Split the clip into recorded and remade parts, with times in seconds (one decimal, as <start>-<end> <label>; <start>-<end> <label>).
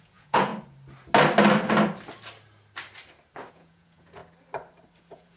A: 0.0-0.5 remade; 0.5-3.5 recorded; 3.5-4.2 remade; 4.2-5.0 recorded; 5.0-5.4 remade